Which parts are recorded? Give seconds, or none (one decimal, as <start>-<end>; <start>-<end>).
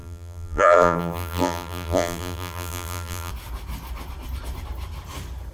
3.3-5.5